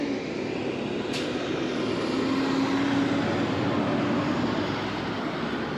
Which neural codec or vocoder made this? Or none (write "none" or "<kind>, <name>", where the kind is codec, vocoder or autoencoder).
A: none